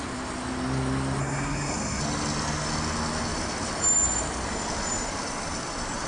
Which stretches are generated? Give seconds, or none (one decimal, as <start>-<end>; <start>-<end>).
1.2-2.0